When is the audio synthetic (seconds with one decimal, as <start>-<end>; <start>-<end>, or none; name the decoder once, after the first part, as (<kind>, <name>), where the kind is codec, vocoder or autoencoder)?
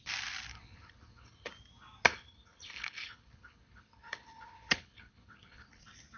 0.5-1.5 (codec, HILCodec); 2.1-5.8